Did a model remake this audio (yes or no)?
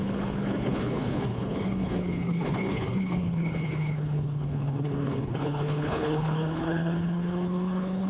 yes